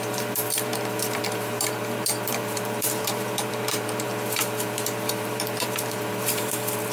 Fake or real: fake